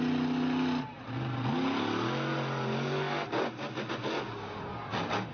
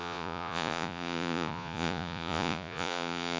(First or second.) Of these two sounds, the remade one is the second